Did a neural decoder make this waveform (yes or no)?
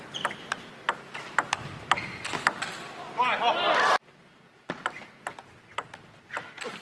no